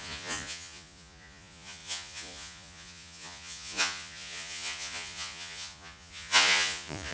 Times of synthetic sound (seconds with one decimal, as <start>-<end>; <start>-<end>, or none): 0.0-7.1